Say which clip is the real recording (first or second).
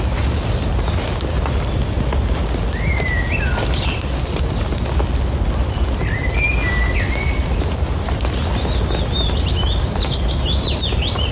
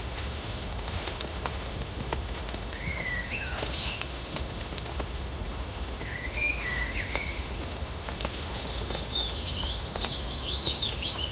first